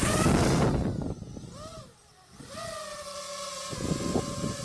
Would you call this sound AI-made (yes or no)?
no